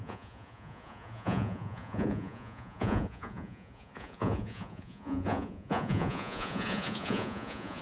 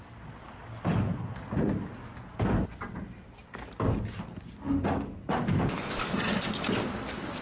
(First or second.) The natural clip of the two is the second